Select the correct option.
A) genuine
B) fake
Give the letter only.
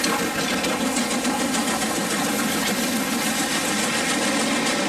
A